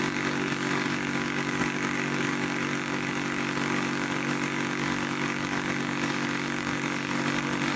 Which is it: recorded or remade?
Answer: remade